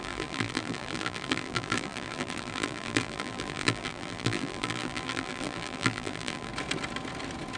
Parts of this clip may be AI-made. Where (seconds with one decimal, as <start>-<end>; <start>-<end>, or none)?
0.0-6.5